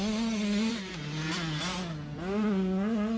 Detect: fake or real real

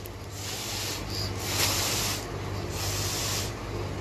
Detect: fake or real real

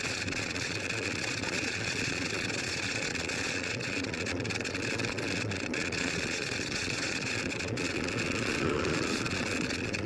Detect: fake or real fake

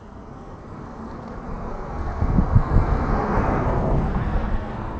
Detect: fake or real fake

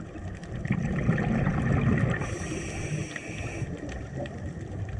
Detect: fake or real real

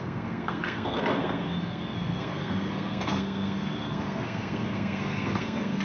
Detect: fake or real fake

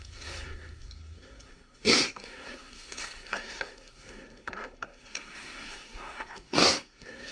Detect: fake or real fake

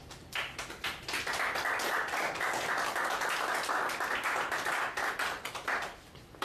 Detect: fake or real real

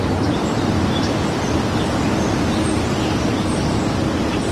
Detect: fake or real real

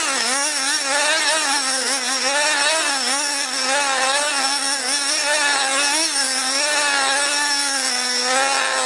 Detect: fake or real real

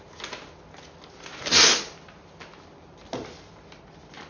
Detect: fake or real real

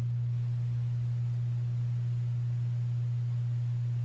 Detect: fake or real real